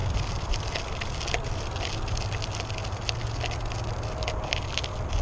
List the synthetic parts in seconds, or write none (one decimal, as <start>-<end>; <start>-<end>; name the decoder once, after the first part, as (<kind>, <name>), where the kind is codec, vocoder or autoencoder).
none